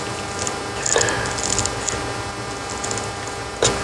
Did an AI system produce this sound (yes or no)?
no